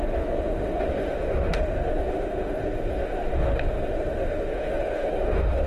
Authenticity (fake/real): fake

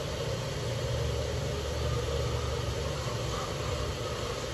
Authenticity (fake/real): real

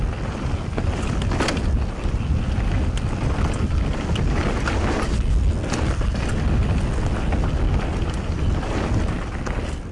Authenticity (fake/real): real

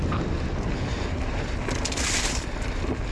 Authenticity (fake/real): real